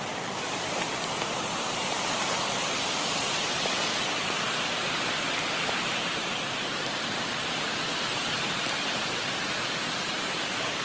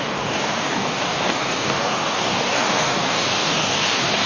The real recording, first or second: first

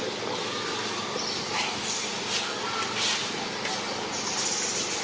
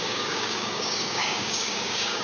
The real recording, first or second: first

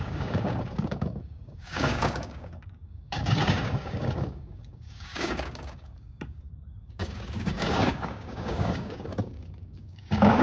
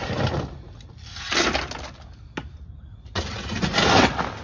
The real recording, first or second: second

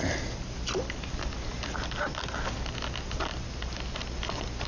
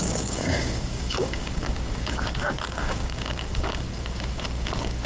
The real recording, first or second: first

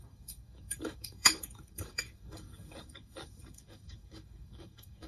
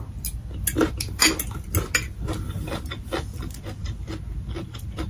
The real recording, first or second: second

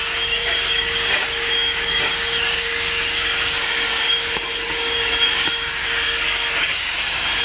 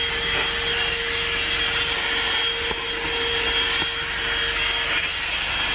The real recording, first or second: second